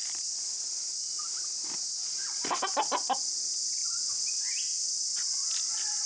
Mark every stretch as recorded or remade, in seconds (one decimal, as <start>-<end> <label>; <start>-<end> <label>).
0.0-6.1 recorded